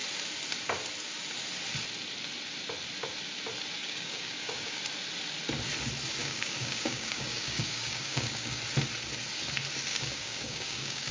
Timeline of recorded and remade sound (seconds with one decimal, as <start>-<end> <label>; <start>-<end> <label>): 0.0-3.8 recorded; 3.8-4.8 remade; 4.8-6.2 recorded; 6.2-8.6 remade; 8.6-9.9 recorded; 9.9-11.1 remade